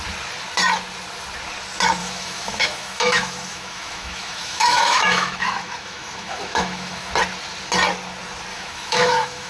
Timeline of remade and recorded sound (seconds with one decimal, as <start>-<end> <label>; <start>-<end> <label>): 0.0-2.0 recorded; 2.0-7.1 remade; 7.1-8.5 recorded; 8.5-9.5 remade